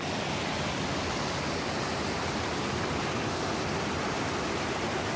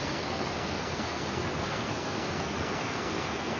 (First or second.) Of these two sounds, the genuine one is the first